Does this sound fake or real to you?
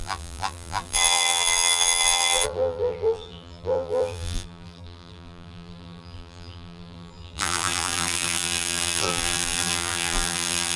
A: fake